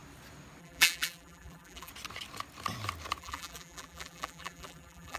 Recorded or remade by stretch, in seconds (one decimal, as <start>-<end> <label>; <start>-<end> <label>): 0.0-0.6 recorded; 0.6-1.9 remade; 1.9-3.2 recorded; 3.2-5.2 remade